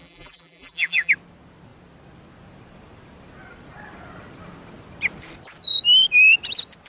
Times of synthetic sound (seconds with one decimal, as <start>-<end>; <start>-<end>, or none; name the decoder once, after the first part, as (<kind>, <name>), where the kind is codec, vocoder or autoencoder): 0.0-1.1 (vocoder, BigVGAN v2)